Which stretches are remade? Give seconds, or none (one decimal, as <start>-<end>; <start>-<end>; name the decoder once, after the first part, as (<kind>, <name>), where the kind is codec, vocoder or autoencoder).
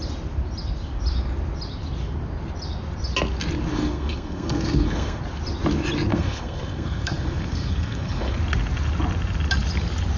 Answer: 3.7-5.2 (codec, SNAC); 6.1-8.4